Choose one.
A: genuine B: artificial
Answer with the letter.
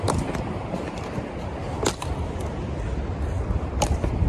A